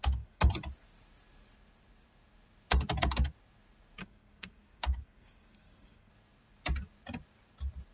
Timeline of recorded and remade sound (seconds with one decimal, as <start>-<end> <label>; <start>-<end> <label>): 0.0-0.5 remade; 0.5-4.0 recorded; 4.0-6.1 remade; 6.1-7.9 recorded